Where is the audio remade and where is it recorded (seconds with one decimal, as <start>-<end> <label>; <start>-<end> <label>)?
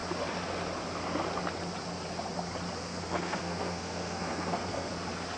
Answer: 0.0-2.8 recorded; 2.8-4.9 remade; 4.9-5.4 recorded